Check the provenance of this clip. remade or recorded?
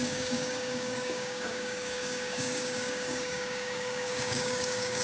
remade